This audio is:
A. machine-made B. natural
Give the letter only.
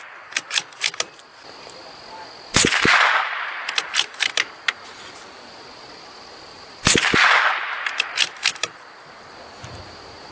B